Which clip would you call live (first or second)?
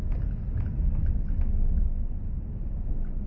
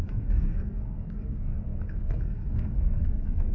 first